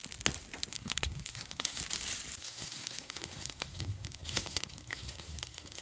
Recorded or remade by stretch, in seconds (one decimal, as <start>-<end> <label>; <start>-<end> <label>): 0.0-0.7 recorded; 0.7-1.8 remade; 1.8-2.4 recorded; 2.4-5.8 remade